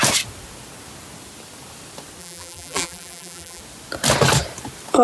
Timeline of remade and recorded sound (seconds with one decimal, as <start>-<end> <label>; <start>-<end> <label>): 0.0-2.2 recorded; 2.2-3.6 remade; 3.6-5.0 recorded